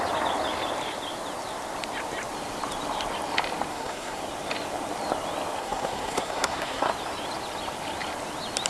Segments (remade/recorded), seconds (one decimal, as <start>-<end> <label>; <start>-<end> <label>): 0.0-3.7 recorded; 3.7-4.2 remade; 4.2-5.6 recorded; 5.6-6.9 remade; 6.9-8.7 recorded

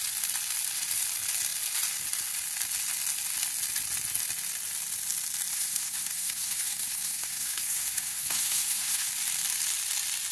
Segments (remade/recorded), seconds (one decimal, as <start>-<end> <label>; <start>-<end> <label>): 0.0-5.5 recorded; 5.5-9.1 remade; 9.1-10.3 recorded